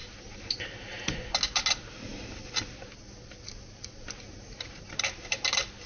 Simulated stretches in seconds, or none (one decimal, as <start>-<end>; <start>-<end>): none